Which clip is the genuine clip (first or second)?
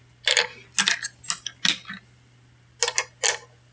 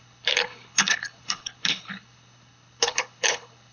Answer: first